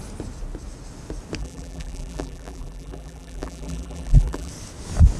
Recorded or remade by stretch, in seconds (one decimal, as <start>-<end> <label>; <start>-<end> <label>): 0.0-1.4 recorded; 1.4-4.5 remade; 4.5-5.2 recorded